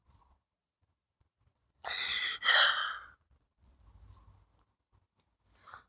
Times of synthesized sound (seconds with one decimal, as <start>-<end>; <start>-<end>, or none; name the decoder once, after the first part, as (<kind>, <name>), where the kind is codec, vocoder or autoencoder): 0.0-2.2 (vocoder, Vocos); 2.8-3.8